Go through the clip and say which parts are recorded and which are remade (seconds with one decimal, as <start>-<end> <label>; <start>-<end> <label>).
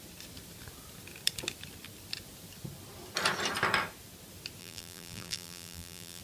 0.0-4.6 recorded; 4.6-6.2 remade